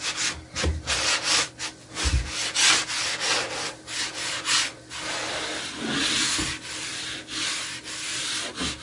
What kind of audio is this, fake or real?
real